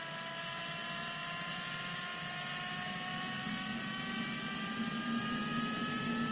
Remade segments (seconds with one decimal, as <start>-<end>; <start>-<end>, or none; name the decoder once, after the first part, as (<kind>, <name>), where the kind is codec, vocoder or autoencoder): none